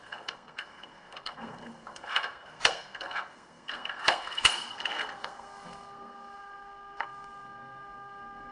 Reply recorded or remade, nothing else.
remade